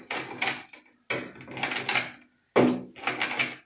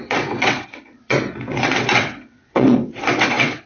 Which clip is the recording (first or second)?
first